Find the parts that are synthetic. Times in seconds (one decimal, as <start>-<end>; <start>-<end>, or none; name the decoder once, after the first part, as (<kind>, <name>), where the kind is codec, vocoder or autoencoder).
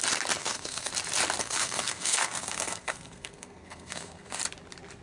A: 0.4-0.9 (codec, SNAC); 1.4-4.4